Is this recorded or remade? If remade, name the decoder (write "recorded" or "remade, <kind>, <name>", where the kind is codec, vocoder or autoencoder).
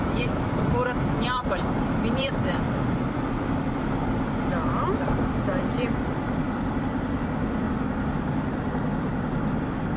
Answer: remade, vocoder, BigVGAN v2